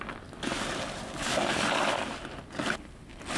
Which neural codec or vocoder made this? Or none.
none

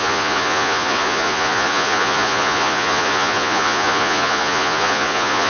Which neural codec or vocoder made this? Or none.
vocoder, Vocos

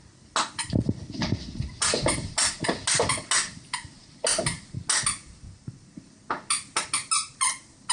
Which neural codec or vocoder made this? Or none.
none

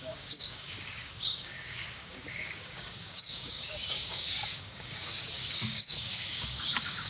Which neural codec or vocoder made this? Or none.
codec, DAC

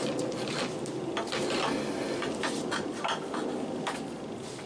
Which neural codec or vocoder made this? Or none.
none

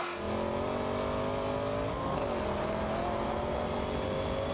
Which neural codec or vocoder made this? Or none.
none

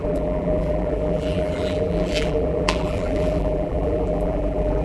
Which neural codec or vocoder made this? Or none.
vocoder, BigVGAN v2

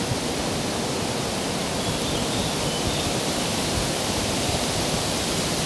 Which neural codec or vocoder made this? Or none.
none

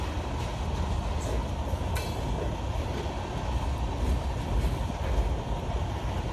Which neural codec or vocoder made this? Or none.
none